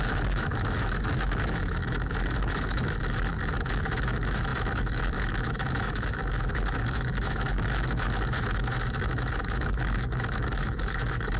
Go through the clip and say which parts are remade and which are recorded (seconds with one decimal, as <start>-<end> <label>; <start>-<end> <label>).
0.0-11.4 remade